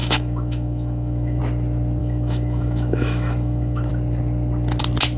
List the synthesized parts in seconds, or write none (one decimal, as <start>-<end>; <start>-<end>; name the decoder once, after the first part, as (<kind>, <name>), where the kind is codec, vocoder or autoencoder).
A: 0.0-1.4 (autoencoder, DAC-VAE); 2.0-3.9